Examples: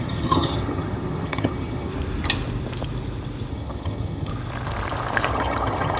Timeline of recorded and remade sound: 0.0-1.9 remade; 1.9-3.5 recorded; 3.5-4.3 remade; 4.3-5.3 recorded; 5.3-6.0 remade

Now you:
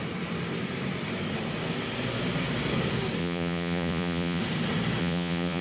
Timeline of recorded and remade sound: 0.0-3.2 recorded; 3.2-4.4 remade; 4.4-5.0 recorded; 5.0-5.6 remade

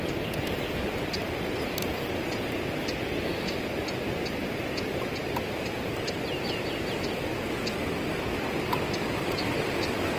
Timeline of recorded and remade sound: 0.0-10.2 recorded

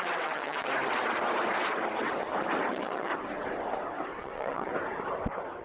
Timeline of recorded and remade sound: 0.0-0.7 remade; 0.7-2.7 recorded; 2.7-3.1 remade; 3.1-4.2 recorded; 4.2-4.7 remade; 4.7-5.6 recorded